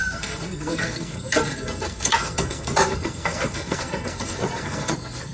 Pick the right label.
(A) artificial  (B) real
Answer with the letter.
A